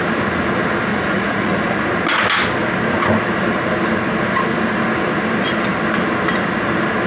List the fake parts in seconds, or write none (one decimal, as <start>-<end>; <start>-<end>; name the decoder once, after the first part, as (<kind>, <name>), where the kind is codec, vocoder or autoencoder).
0.9-1.8 (vocoder, Vocos)